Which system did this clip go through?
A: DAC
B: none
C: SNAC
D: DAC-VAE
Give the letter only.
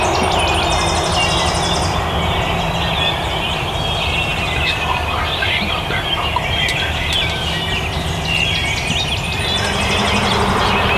B